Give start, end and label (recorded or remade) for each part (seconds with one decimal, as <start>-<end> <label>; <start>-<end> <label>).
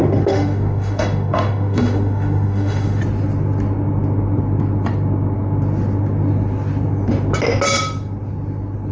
0.0-3.0 remade; 3.0-8.9 recorded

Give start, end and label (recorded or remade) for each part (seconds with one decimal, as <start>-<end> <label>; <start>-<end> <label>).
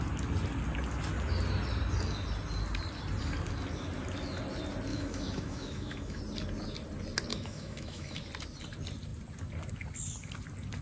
0.0-4.9 recorded; 4.9-6.2 remade; 6.2-7.3 recorded; 7.3-8.3 remade; 8.3-10.8 recorded